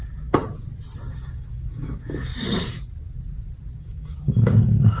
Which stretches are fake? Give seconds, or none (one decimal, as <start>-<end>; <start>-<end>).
1.1-2.3; 3.8-5.0